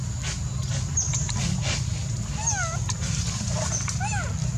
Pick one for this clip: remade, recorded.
recorded